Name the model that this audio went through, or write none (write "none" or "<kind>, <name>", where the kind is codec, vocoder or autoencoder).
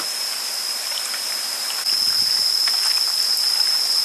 none